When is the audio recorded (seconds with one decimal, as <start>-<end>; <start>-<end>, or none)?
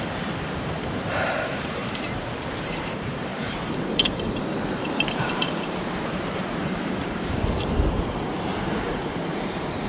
none